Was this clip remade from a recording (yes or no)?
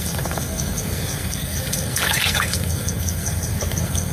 yes